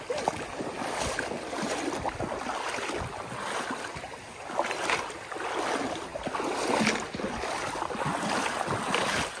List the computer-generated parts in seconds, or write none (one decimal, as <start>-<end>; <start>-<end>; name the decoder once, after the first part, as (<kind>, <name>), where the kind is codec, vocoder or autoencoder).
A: none